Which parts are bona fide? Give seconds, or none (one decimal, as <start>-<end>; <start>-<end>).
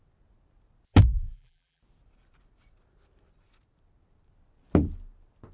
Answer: 0.0-1.1; 1.8-5.5